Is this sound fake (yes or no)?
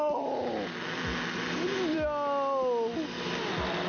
no